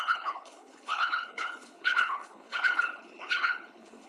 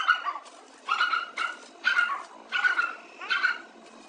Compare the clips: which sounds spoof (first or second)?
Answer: first